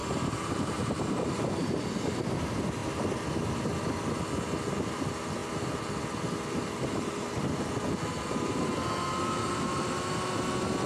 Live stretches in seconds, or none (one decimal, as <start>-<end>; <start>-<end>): 1.8-10.9